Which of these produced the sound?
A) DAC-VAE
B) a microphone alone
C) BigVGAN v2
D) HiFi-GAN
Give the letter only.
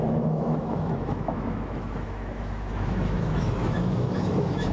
A